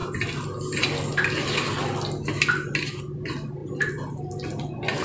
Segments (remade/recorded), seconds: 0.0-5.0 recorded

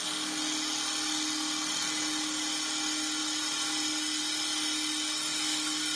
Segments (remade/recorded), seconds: 0.0-6.0 recorded

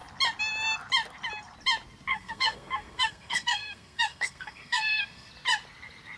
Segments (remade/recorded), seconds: 0.0-2.1 recorded; 2.1-5.3 remade; 5.3-6.2 recorded

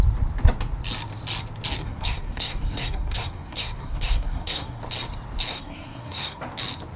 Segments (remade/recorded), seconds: 0.0-1.8 recorded; 1.8-4.8 remade; 4.8-5.5 recorded; 5.5-6.4 remade; 6.4-7.0 recorded